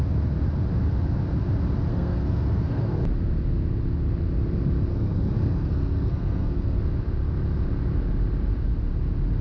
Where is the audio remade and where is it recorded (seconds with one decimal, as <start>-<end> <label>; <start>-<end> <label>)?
0.0-1.9 recorded; 1.9-2.9 remade; 2.9-4.9 recorded; 4.9-6.8 remade; 6.8-9.4 recorded